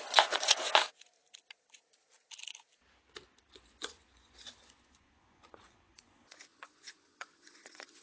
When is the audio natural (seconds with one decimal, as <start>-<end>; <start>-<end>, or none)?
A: 0.8-3.5